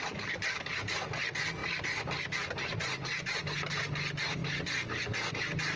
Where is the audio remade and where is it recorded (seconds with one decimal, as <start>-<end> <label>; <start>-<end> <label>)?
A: 0.0-5.8 recorded